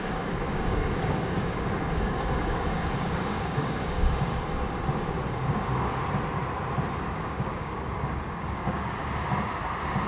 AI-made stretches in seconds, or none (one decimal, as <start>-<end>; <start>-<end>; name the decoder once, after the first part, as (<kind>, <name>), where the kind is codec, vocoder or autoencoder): 0.0-4.3 (codec, DAC); 5.3-5.9; 7.0-9.0